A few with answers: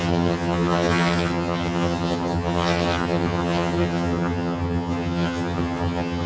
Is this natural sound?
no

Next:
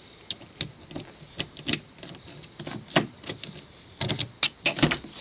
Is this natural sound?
yes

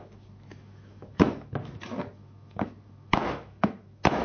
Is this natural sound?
no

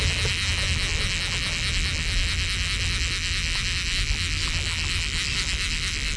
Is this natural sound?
yes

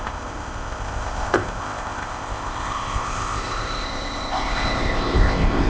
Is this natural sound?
no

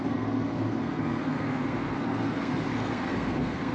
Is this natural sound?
no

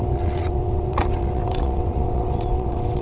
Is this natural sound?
no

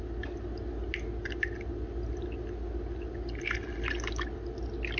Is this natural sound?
yes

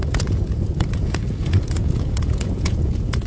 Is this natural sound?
no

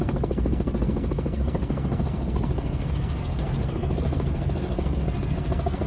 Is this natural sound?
no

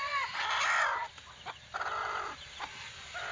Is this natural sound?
yes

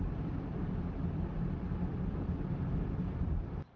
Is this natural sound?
yes